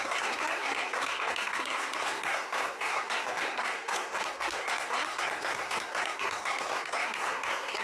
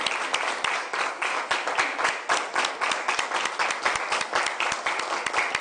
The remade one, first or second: first